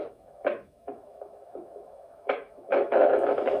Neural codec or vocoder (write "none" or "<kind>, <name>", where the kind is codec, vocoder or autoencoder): autoencoder, DAC-VAE